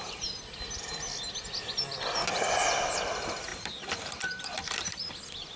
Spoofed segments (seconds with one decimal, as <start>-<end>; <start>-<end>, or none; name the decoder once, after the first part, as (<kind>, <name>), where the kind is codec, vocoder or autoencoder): 3.5-5.1 (vocoder, BigVGAN v2)